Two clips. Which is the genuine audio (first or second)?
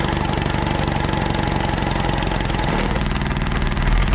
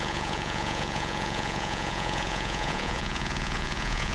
first